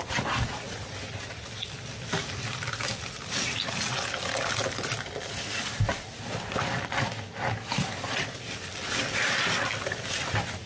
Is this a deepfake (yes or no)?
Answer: no